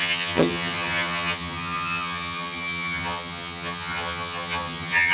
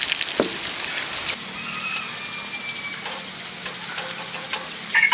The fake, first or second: first